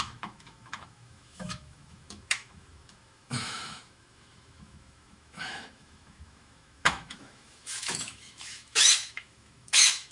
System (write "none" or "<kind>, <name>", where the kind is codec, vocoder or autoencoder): autoencoder, DAC-VAE